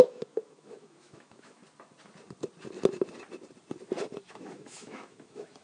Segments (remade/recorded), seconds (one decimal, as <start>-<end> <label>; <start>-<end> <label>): 0.0-1.6 remade; 1.6-4.3 recorded; 4.3-5.6 remade